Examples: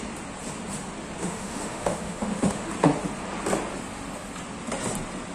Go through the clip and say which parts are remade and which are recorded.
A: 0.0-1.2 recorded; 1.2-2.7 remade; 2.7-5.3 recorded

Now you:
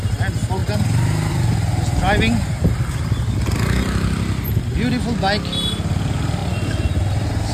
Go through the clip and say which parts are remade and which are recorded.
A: 0.0-7.5 recorded

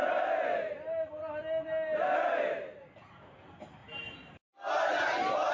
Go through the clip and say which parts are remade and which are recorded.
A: 0.0-5.5 recorded

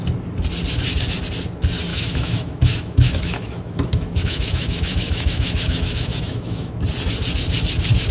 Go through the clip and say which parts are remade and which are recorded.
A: 0.0-1.9 recorded; 1.9-6.8 remade; 6.8-8.1 recorded

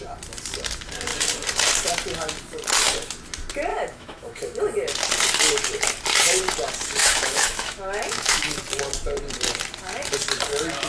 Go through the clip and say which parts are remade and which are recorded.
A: 0.0-3.7 recorded; 3.7-4.6 remade; 4.6-7.0 recorded; 7.0-8.6 remade; 8.6-10.9 recorded

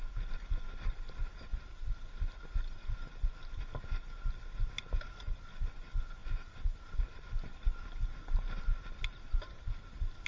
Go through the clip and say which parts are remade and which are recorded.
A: 0.0-10.3 recorded